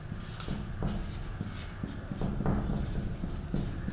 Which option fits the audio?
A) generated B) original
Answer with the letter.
B